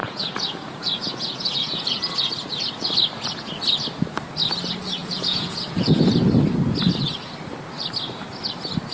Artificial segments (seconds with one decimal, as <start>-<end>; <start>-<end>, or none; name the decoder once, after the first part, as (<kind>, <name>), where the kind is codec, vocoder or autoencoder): 0.0-2.0 (vocoder, Vocos); 5.0-6.1